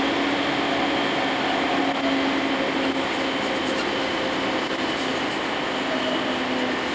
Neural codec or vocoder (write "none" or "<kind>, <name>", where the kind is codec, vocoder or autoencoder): none